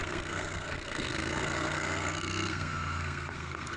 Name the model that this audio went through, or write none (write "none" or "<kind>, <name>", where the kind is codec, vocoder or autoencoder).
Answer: codec, SNAC